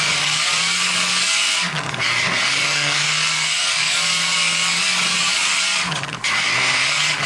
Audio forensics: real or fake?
fake